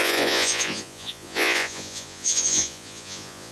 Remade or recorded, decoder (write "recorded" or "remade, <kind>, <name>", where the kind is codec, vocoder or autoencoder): remade, vocoder, Vocos